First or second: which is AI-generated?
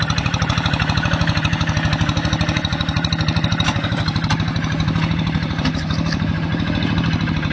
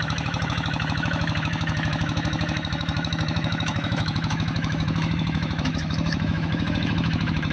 second